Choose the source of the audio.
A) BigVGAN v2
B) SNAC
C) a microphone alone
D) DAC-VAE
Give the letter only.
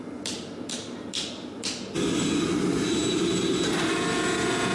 C